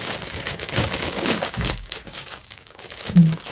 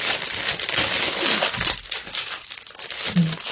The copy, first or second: first